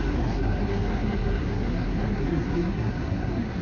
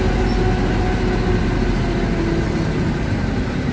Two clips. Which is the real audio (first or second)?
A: second